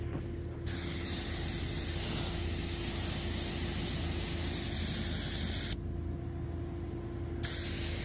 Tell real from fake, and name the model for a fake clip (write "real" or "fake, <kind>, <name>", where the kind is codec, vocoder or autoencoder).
real